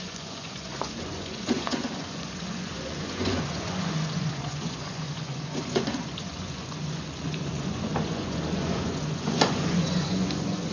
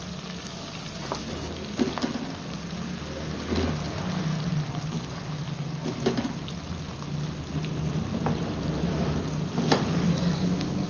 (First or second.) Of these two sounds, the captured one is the second